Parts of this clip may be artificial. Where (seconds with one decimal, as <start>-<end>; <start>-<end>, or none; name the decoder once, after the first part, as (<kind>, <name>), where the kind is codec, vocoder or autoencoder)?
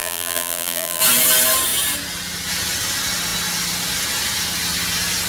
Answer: 0.0-1.0 (vocoder, BigVGAN v2)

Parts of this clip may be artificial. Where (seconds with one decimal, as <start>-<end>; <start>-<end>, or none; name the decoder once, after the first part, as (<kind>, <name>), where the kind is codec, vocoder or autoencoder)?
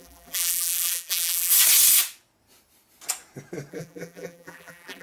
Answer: 0.0-1.5 (vocoder, BigVGAN v2); 3.7-5.0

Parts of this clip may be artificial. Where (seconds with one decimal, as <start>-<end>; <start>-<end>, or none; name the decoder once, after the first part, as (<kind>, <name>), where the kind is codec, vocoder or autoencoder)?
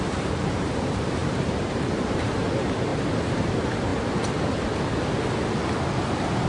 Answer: 0.0-3.9 (vocoder, BigVGAN v2)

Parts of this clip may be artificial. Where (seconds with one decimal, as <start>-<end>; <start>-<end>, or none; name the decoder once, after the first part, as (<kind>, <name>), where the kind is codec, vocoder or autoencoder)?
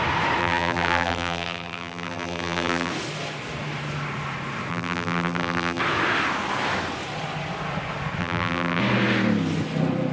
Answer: 0.4-2.9 (vocoder, BigVGAN v2); 4.7-5.8; 8.2-8.8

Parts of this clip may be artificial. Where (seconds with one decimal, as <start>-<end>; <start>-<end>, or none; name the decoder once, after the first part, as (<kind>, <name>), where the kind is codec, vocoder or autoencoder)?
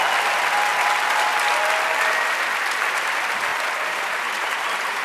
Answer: 3.5-5.0 (vocoder, BigVGAN v2)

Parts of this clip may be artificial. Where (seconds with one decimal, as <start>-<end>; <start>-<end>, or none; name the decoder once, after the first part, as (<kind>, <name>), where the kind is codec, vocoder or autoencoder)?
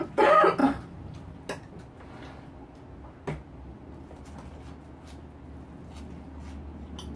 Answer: none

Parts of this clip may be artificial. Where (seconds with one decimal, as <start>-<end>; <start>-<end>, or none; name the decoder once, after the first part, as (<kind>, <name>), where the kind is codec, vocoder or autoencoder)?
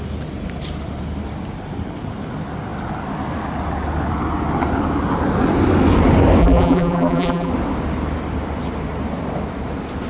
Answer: 6.4-7.5 (vocoder, BigVGAN v2)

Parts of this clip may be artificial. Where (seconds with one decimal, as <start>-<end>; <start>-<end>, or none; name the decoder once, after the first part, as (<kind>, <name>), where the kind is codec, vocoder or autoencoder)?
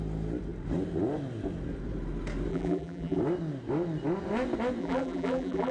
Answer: 2.5-3.2 (vocoder, BigVGAN v2); 4.8-5.7